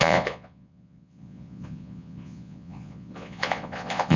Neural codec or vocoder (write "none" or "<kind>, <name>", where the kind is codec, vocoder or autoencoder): vocoder, Vocos